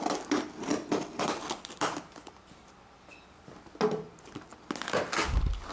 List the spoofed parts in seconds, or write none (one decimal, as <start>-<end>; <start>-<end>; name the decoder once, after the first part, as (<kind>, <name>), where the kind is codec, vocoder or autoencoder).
none